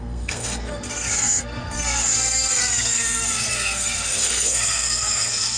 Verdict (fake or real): fake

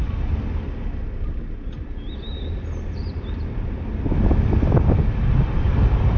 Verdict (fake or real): real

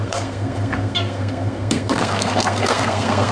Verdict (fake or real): fake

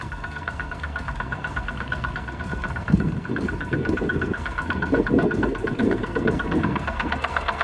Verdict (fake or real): fake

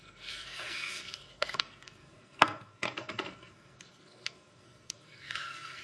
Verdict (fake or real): fake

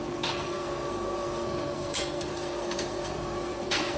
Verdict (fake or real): fake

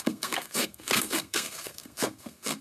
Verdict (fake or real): fake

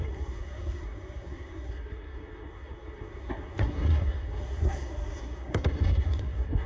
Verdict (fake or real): fake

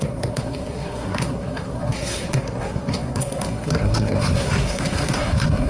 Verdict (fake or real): fake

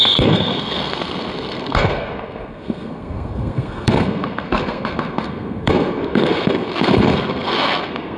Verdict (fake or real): fake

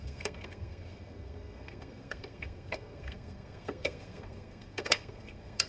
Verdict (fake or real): fake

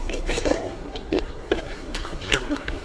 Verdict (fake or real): fake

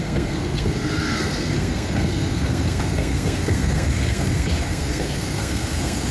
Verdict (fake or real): fake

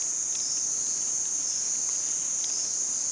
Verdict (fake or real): real